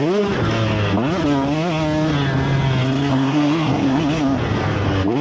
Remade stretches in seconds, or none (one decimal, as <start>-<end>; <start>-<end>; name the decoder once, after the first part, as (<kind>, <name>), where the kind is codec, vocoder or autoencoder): 3.1-4.0 (codec, SNAC)